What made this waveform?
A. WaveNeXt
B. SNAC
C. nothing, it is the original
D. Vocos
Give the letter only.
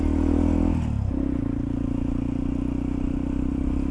C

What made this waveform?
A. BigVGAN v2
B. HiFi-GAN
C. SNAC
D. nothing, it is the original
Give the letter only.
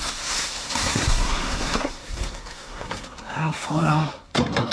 C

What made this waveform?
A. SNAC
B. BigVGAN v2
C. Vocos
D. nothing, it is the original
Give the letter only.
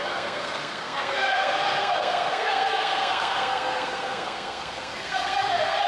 A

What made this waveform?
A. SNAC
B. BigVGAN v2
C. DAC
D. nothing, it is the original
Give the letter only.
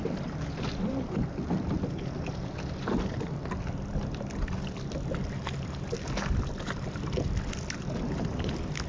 D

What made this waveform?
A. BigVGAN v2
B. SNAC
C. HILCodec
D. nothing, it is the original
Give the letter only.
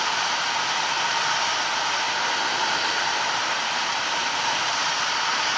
D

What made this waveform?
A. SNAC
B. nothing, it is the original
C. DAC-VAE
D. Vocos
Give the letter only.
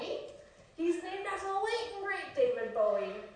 B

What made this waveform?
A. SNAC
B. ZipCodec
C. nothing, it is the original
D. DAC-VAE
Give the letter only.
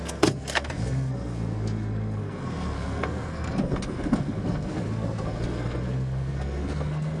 A